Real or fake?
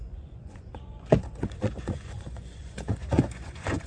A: fake